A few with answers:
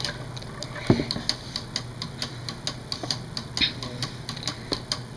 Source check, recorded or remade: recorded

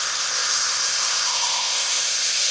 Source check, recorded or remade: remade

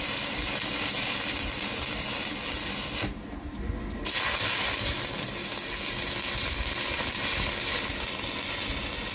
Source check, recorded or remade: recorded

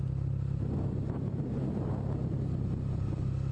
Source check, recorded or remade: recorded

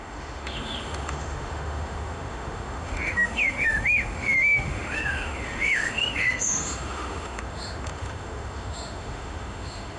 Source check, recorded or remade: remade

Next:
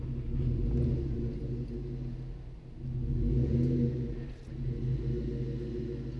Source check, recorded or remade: recorded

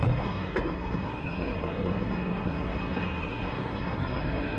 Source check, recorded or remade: remade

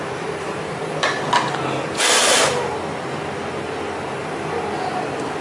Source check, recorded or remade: recorded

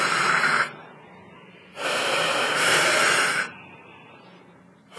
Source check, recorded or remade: remade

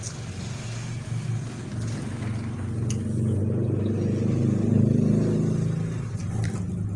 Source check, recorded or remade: recorded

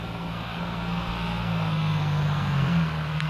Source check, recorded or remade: remade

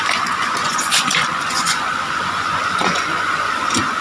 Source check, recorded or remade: remade